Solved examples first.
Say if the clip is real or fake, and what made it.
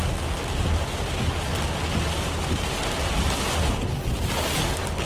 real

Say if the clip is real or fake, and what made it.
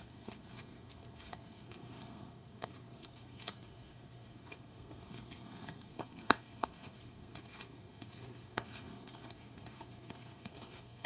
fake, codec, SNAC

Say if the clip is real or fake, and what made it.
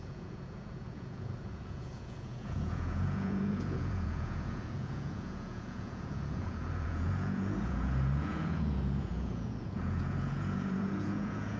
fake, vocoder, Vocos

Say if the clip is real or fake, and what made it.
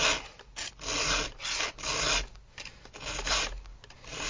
real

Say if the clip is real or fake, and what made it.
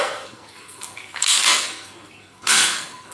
fake, codec, SNAC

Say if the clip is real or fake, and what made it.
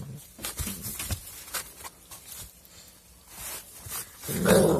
real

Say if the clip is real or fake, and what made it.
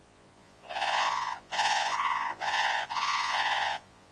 fake, vocoder, Vocos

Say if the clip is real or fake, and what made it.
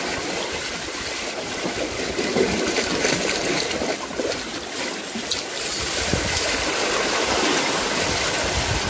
real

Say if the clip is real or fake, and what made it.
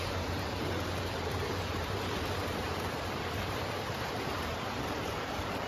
fake, vocoder, BigVGAN v2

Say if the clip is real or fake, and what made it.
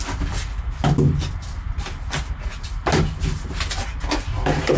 real